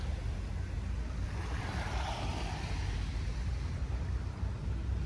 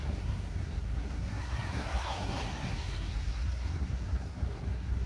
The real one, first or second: first